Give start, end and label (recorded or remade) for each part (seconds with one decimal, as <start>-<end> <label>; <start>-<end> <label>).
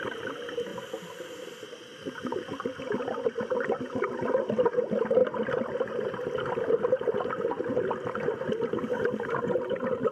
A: 0.0-0.7 recorded; 0.7-3.3 remade; 3.3-10.1 recorded